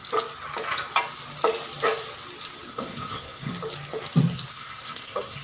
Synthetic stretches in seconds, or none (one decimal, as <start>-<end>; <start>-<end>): 2.7-3.5; 4.5-5.4